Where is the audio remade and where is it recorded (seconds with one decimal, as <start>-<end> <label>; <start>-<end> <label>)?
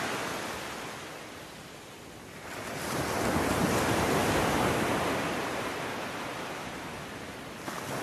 0.0-8.0 recorded